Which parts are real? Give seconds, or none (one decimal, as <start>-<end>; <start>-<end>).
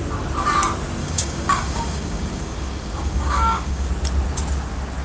0.0-1.0; 3.9-5.0